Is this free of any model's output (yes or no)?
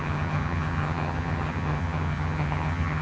no